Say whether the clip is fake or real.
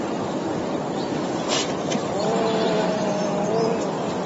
fake